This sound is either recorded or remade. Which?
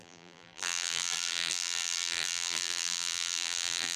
remade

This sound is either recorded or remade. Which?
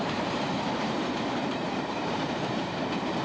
remade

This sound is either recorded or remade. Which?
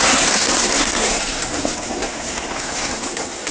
remade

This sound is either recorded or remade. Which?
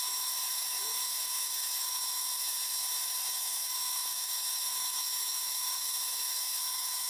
remade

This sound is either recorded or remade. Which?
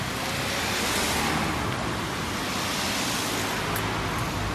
recorded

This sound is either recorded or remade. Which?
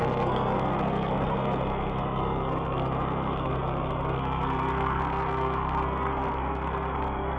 remade